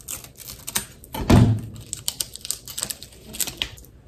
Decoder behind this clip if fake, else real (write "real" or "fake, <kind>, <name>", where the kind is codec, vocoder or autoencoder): real